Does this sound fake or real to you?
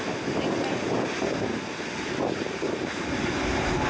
real